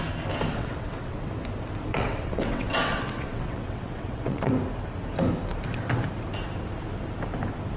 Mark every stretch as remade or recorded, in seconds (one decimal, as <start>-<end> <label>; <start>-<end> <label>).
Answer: 0.0-0.5 recorded; 0.5-1.3 remade; 1.3-1.9 recorded; 1.9-4.5 remade; 4.5-7.8 recorded